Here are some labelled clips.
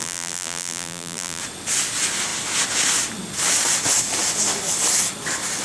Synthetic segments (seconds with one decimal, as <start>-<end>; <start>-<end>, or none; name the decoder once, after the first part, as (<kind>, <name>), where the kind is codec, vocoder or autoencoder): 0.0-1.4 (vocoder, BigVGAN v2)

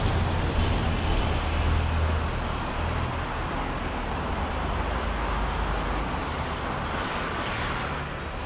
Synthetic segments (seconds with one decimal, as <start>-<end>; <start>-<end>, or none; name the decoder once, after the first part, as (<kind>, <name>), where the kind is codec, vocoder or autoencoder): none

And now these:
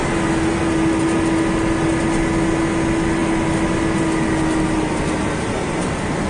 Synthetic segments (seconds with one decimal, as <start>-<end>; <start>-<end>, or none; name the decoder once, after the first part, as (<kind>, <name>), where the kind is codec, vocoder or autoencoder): none

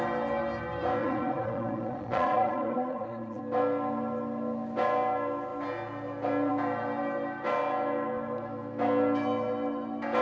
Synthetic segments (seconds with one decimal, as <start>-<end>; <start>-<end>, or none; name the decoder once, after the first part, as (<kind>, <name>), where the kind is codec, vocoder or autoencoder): 1.0-3.4 (vocoder, Vocos)

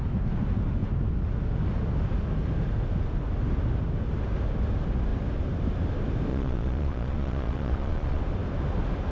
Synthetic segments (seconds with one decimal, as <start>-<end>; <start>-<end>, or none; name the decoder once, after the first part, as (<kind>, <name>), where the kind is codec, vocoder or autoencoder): 6.3-8.2 (vocoder, Vocos)

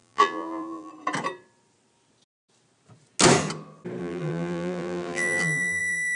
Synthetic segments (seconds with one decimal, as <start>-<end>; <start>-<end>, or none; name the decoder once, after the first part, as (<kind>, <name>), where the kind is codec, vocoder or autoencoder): 0.0-0.9 (vocoder, BigVGAN v2); 4.0-6.2